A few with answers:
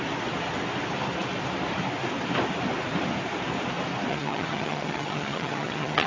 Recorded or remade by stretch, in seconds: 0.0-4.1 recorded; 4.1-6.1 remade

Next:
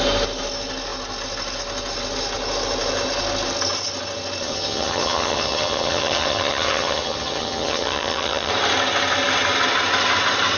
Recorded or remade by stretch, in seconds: 0.0-4.4 recorded; 4.4-8.5 remade; 8.5-10.6 recorded

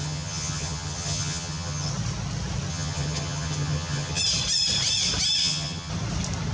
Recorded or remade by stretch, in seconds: 0.0-1.9 remade; 1.9-2.7 recorded; 2.7-4.2 remade; 4.2-5.4 recorded; 5.4-5.9 remade; 5.9-6.5 recorded

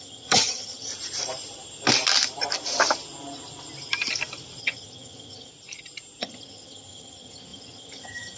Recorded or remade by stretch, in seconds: 0.0-0.9 remade; 0.9-4.6 recorded; 4.6-5.5 remade; 5.5-6.2 recorded; 6.2-8.4 remade

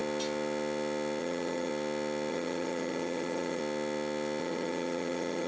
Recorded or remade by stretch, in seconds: 0.0-1.2 recorded; 1.2-1.7 remade; 1.7-2.3 recorded; 2.3-3.6 remade; 3.6-4.4 recorded; 4.4-5.5 remade